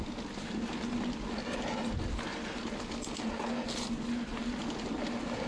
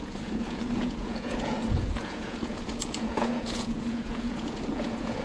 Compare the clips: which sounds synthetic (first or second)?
second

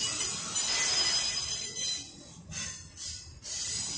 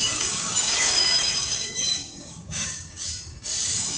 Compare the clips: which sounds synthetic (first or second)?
second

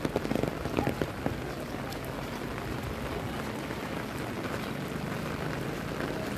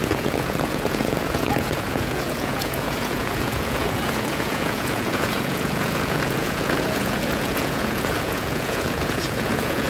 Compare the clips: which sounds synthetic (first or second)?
second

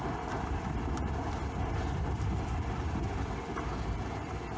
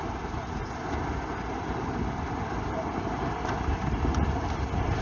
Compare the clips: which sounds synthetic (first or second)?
second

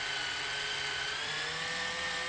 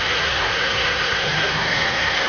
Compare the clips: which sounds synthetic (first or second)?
second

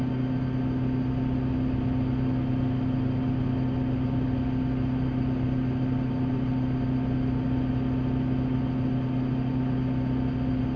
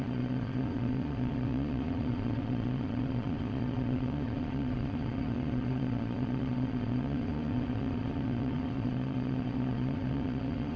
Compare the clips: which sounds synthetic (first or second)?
second